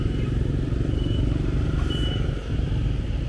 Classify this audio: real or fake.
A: fake